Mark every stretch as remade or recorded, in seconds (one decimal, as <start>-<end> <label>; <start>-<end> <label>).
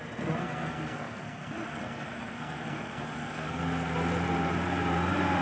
0.0-0.4 recorded; 0.4-3.6 remade; 3.6-5.4 recorded